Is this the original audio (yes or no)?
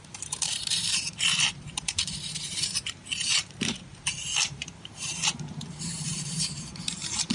no